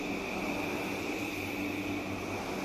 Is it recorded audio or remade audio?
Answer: recorded